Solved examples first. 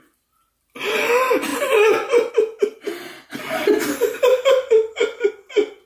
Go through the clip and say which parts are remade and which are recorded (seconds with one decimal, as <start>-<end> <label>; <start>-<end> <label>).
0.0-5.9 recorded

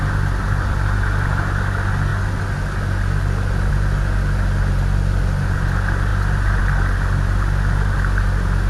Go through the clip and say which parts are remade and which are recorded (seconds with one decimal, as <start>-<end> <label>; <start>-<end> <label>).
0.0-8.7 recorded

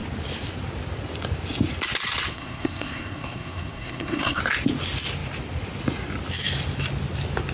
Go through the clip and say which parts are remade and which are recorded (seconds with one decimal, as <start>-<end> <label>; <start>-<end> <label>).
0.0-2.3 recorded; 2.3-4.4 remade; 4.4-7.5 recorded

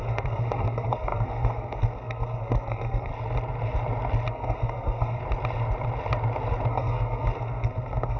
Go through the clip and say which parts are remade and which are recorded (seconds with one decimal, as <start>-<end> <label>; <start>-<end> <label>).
0.0-3.1 remade; 3.1-4.3 recorded; 4.3-5.2 remade; 5.2-6.7 recorded; 6.7-8.2 remade

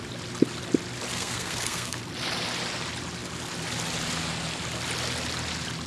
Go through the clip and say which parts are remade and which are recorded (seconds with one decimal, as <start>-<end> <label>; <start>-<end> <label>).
0.0-1.1 recorded; 1.1-2.0 remade; 2.0-5.9 recorded